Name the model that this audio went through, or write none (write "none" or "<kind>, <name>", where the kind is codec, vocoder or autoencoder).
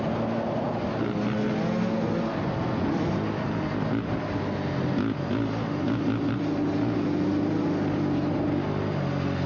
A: none